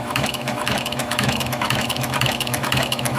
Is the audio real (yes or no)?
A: no